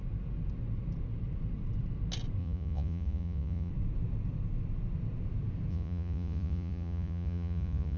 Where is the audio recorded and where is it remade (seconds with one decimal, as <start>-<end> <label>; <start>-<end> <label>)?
0.0-2.4 recorded; 2.4-3.7 remade; 3.7-5.7 recorded; 5.7-8.0 remade